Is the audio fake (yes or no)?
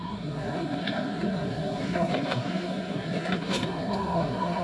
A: yes